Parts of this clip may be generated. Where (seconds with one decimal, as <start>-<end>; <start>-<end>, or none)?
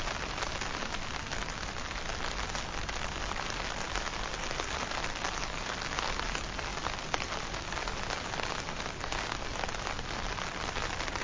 none